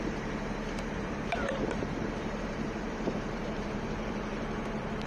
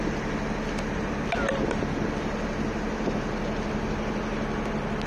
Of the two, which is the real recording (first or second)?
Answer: second